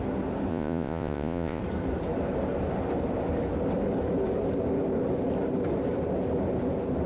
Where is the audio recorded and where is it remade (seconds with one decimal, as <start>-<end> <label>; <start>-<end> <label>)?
0.0-0.5 recorded; 0.5-1.6 remade; 1.6-7.1 recorded